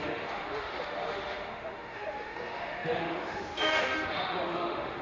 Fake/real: fake